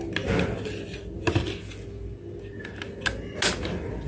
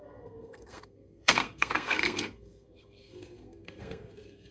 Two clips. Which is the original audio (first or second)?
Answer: first